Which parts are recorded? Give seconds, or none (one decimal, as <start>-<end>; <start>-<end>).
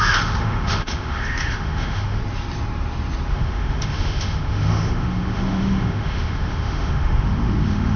2.2-3.3